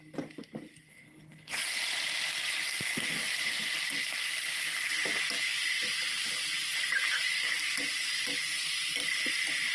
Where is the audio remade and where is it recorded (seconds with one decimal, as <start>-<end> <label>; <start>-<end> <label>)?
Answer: 0.0-0.9 recorded; 0.9-1.6 remade; 1.6-9.7 recorded